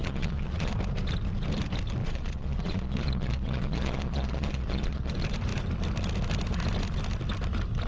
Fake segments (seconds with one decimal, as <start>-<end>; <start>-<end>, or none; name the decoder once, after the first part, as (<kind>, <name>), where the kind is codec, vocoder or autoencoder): 0.0-0.7 (vocoder, Vocos); 2.0-5.1